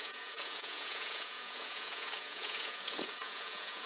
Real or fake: fake